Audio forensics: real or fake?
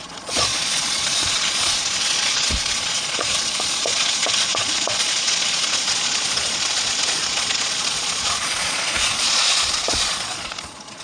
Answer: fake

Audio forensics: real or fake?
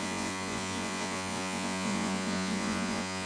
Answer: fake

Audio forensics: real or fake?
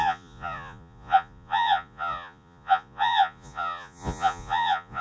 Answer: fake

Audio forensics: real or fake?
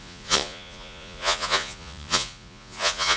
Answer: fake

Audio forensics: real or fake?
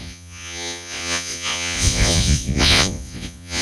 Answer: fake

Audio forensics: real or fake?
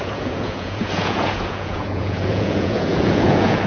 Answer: fake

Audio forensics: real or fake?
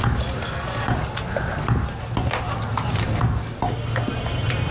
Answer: real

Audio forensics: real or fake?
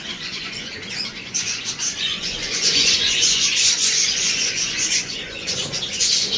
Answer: fake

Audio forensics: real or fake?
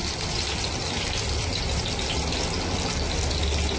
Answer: real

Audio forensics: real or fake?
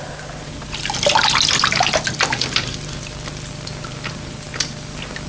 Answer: real